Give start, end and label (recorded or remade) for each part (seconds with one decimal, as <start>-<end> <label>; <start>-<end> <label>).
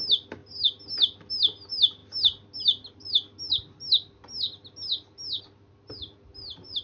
0.0-6.8 recorded